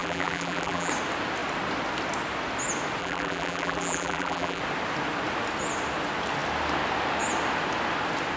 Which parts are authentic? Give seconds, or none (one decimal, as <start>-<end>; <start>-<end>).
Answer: 0.9-3.0; 4.6-8.4